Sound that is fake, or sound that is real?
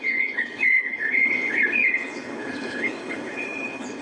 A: fake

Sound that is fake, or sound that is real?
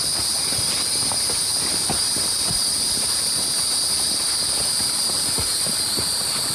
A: real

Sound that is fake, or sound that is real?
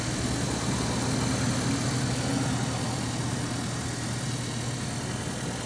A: real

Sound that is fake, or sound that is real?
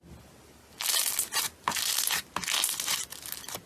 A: real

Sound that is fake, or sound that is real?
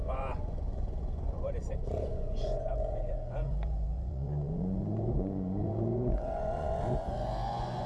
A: fake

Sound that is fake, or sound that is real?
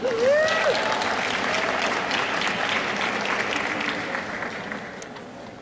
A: real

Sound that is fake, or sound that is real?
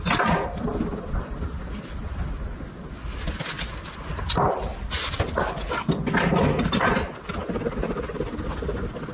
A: real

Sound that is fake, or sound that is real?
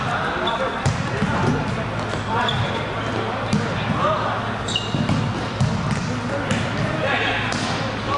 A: real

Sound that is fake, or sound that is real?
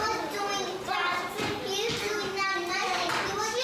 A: fake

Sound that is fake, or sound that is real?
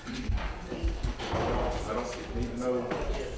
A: real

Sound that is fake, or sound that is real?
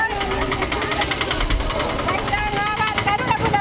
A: real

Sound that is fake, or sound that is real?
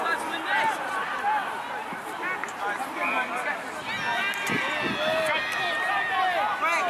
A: real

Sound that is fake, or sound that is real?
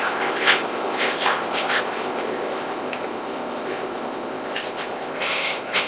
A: fake